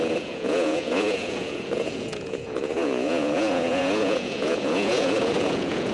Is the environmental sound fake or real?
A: fake